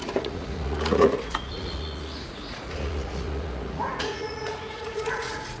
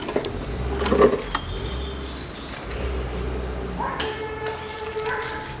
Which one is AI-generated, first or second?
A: first